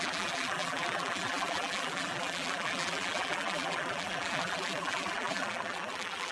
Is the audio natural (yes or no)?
no